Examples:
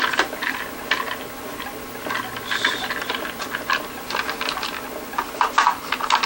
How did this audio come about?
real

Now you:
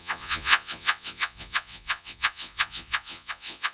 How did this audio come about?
fake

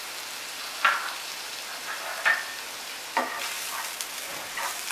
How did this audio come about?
real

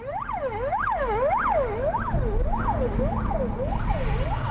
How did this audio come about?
real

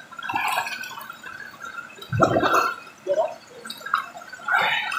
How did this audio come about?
real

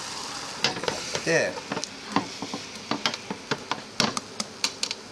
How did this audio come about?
real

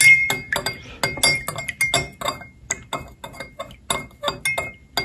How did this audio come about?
real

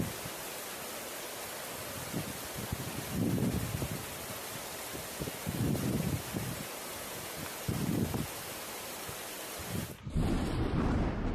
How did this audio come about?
real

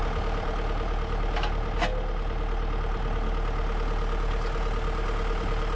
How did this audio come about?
real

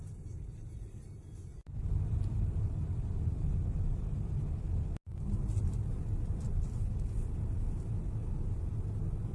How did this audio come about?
real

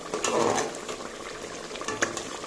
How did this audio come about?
real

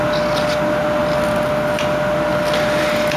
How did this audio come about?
real